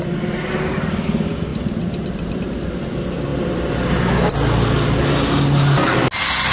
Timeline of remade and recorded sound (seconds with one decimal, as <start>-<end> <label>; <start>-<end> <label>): 0.0-1.5 recorded; 1.5-2.7 remade; 2.7-6.5 recorded